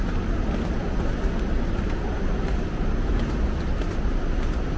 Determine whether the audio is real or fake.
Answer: real